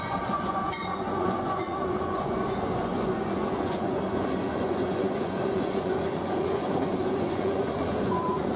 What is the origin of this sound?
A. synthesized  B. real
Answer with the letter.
A